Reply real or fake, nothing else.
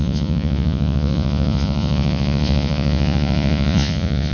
fake